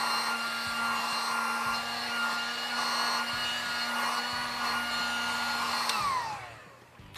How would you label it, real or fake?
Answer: real